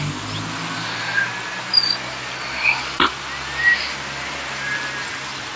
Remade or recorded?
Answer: recorded